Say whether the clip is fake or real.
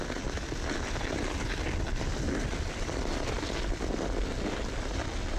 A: real